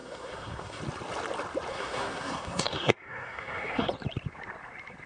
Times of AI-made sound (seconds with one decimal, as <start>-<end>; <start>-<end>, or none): 0.0-0.8; 1.7-3.9